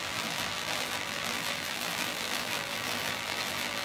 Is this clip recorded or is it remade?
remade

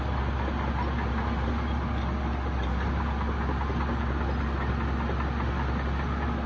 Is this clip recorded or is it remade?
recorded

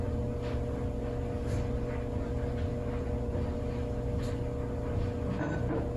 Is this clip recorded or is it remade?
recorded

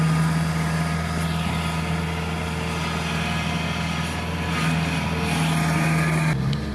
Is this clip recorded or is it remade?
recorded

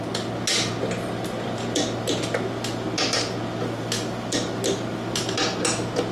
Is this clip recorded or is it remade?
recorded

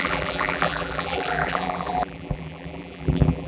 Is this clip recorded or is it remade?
remade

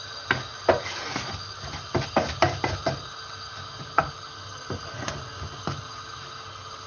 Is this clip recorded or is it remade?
recorded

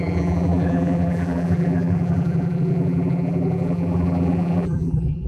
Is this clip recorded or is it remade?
remade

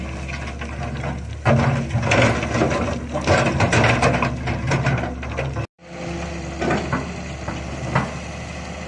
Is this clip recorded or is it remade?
recorded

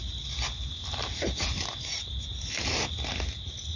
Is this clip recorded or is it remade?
recorded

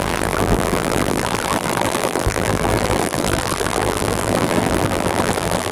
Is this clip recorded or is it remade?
remade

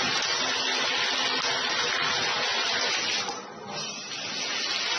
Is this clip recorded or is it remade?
recorded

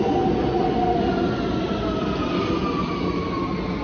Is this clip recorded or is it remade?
recorded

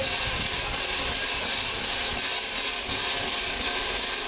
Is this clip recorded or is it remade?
recorded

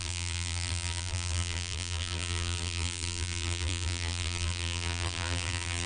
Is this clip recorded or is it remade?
remade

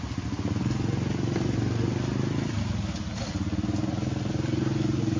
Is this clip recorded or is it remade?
recorded